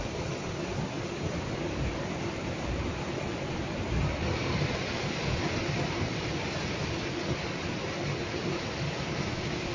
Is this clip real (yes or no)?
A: yes